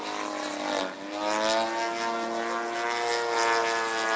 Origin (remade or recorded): recorded